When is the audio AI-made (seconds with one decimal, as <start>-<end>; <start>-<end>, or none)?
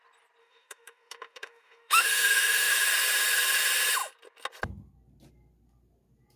0.4-2.7